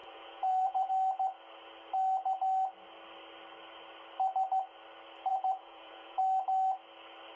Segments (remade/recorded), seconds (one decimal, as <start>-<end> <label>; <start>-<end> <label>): 0.0-0.9 remade; 0.9-5.3 recorded; 5.3-6.2 remade; 6.2-7.4 recorded

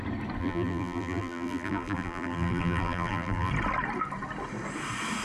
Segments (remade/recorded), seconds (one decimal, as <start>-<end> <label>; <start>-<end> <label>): 0.0-0.4 recorded; 0.4-3.5 remade; 3.5-5.2 recorded

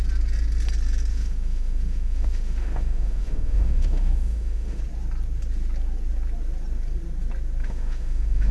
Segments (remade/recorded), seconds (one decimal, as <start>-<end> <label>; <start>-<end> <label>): 0.0-1.1 recorded; 1.1-4.8 remade; 4.8-7.6 recorded; 7.6-8.5 remade

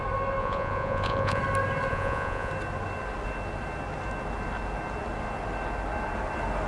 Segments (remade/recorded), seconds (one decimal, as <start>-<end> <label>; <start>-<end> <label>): 0.0-0.4 recorded; 0.4-1.4 remade; 1.4-1.9 recorded; 1.9-2.5 remade; 2.5-6.7 recorded

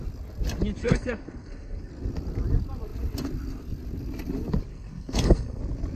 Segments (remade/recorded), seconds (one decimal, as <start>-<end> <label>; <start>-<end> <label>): 0.0-0.8 recorded; 0.8-1.9 remade; 1.9-4.7 recorded; 4.7-5.6 remade; 5.6-6.0 recorded